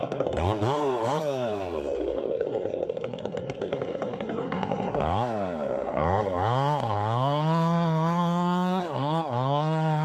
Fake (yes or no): yes